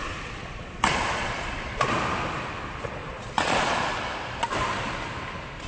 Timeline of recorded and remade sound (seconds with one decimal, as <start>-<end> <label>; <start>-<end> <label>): 0.0-1.8 remade; 1.8-3.0 recorded; 3.0-3.9 remade; 3.9-5.7 recorded